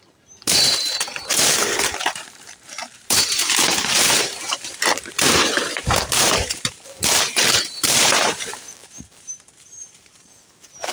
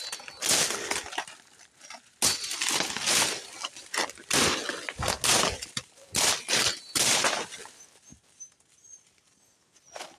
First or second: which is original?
second